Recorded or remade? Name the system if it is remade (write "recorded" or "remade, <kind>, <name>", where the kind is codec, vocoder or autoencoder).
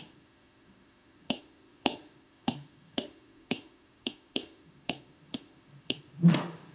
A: remade, autoencoder, DAC-VAE